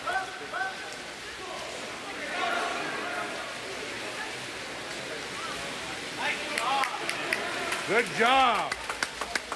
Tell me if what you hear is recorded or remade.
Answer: recorded